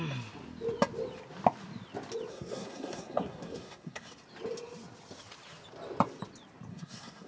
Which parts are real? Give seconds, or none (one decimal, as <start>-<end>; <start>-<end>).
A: 0.0-2.3; 4.1-6.7